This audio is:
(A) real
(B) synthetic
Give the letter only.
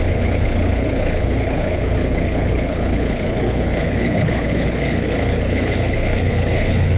B